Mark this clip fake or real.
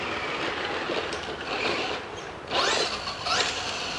real